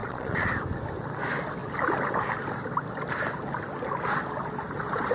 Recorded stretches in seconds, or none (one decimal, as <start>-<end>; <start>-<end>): 0.5-5.1

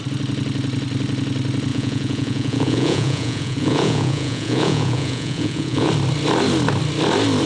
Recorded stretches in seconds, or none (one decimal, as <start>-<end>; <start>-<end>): 0.0-1.7; 5.9-7.5

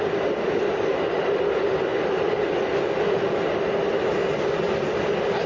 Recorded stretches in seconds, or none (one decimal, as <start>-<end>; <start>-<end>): 0.0-5.5

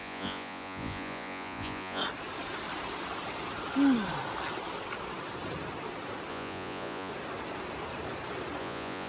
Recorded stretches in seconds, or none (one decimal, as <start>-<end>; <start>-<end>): 2.0-6.3; 7.1-8.6

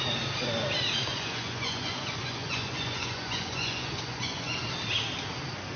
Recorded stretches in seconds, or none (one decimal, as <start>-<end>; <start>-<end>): 0.0-1.1; 4.6-5.8

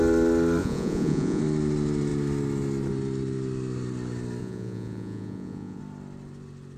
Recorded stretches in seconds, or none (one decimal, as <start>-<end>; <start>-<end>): 0.0-0.6; 1.4-4.4; 5.8-6.8

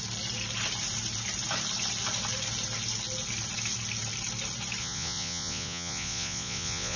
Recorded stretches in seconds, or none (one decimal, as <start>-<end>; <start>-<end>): 0.0-4.8

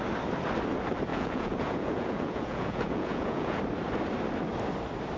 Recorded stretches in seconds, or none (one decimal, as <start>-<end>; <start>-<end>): 0.0-1.1; 3.6-5.2